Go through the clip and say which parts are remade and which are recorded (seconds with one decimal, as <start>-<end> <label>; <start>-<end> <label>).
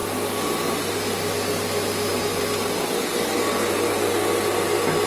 0.0-5.1 recorded